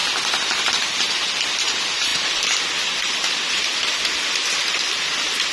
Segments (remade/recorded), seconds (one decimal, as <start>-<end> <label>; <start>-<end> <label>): 0.0-5.5 recorded